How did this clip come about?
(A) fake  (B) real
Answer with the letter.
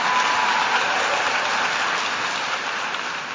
B